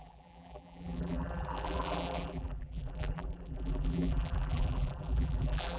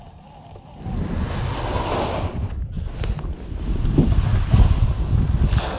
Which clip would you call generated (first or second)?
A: first